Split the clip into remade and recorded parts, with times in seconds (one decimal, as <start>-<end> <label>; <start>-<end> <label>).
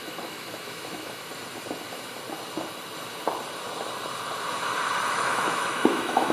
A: 0.0-1.3 remade; 1.3-5.1 recorded; 5.1-6.3 remade